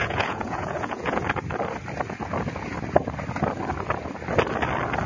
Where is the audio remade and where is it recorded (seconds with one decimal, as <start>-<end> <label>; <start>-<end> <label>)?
0.0-1.2 remade; 1.2-5.1 recorded